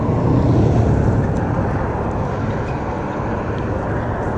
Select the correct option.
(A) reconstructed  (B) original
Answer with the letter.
B